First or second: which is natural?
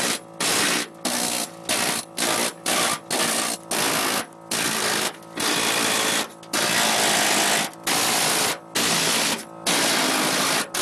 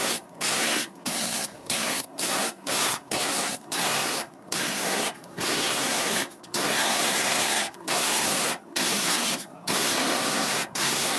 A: first